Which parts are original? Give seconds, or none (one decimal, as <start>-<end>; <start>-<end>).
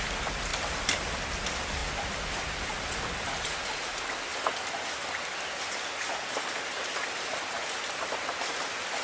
0.0-9.0